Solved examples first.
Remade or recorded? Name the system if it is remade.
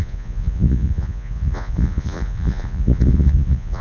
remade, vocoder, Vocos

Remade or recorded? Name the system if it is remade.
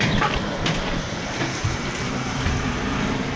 remade, vocoder, BigVGAN v2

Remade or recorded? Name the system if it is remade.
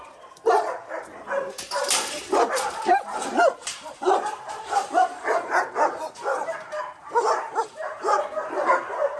remade, vocoder, BigVGAN v2